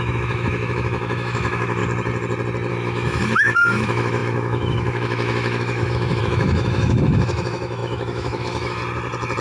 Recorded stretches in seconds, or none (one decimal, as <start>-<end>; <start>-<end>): 1.8-2.7; 8.8-9.4